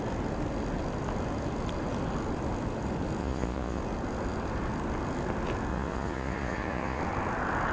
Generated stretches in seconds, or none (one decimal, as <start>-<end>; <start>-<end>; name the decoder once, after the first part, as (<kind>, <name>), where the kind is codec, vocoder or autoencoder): 3.2-3.8 (vocoder, Vocos); 5.7-7.0